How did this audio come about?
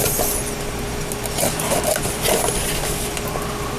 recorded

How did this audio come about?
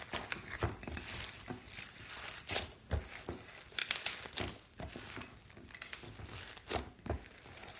recorded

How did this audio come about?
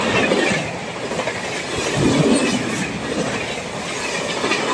recorded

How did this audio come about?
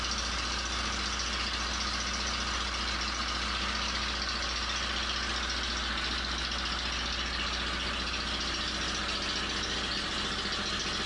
recorded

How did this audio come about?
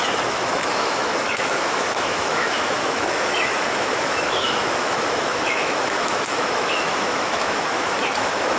remade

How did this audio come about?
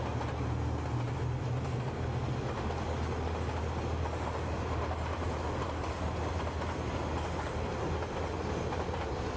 recorded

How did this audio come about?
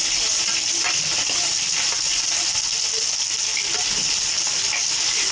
recorded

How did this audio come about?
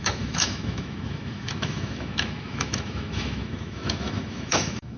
remade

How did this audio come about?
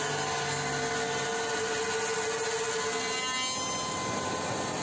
recorded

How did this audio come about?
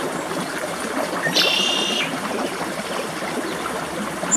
recorded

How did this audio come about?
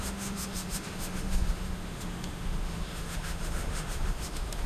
remade